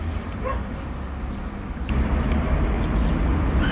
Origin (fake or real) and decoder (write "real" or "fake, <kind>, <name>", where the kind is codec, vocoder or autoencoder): real